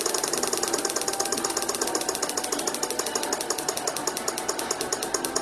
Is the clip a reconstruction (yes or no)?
no